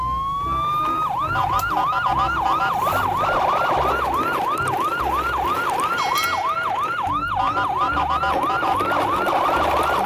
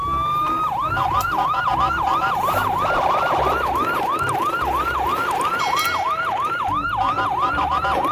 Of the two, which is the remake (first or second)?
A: second